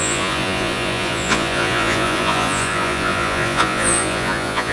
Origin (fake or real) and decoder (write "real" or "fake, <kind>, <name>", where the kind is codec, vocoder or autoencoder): fake, vocoder, Vocos